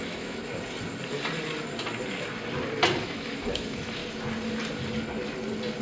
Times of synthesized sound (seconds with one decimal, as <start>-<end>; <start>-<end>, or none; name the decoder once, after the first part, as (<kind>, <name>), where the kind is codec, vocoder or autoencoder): 0.0-0.4 (autoencoder, DAC-VAE); 3.0-4.0